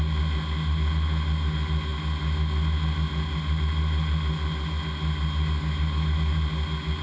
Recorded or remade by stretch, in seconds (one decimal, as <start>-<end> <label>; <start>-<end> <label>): 0.0-7.0 recorded